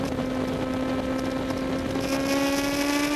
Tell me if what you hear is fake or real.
real